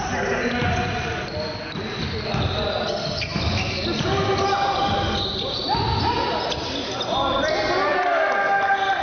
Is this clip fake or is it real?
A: real